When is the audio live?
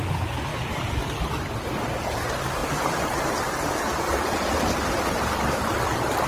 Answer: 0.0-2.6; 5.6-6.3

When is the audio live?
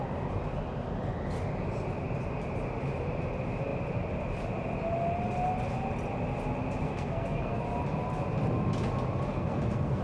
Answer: 0.0-6.8; 7.6-9.3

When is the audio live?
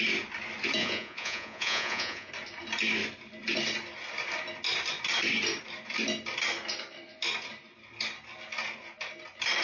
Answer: 0.0-0.8; 2.3-9.6